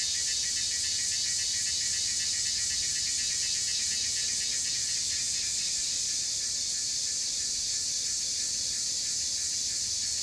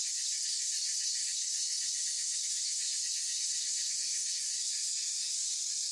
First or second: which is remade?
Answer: second